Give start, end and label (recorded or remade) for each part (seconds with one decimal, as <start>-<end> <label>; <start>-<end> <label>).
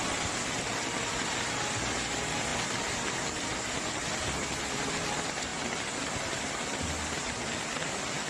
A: 0.0-8.3 recorded